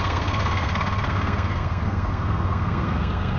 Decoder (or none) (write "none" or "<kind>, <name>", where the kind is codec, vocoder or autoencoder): codec, SNAC